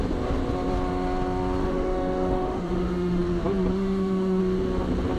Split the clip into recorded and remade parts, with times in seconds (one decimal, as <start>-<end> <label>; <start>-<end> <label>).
0.0-1.6 recorded; 1.6-3.2 remade; 3.2-3.7 recorded; 3.7-4.4 remade; 4.4-5.2 recorded